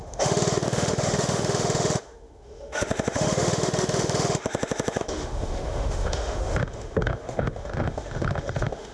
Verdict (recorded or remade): remade